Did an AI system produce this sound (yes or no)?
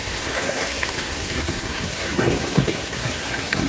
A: yes